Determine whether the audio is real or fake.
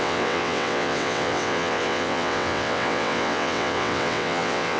fake